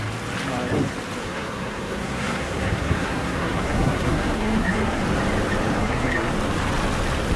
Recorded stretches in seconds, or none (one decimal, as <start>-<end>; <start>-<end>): 0.0-1.2; 5.0-5.8; 6.3-7.4